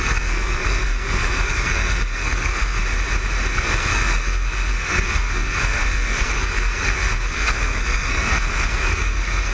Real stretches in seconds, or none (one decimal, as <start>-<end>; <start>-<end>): 2.8-3.5